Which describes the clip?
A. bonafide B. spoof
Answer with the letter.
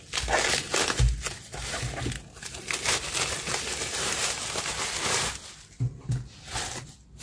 A